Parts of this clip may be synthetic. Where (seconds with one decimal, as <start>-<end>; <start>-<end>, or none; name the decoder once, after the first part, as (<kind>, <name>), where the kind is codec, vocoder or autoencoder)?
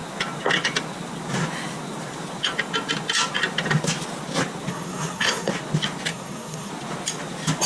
4.7-5.5 (codec, SNAC); 6.1-6.7